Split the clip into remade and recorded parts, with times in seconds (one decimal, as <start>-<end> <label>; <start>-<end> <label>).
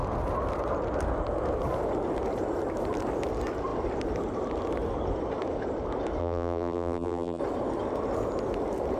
0.0-6.2 recorded; 6.2-7.4 remade; 7.4-9.0 recorded